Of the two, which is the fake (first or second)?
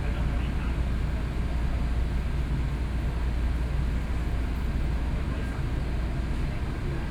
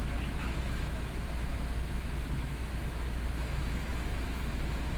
second